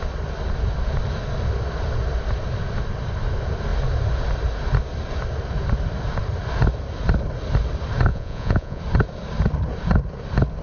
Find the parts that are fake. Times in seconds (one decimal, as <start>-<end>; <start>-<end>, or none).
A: 8.1-8.8